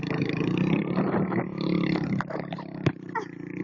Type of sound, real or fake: fake